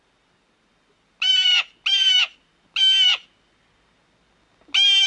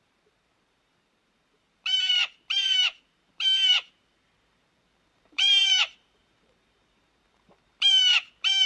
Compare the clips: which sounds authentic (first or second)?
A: first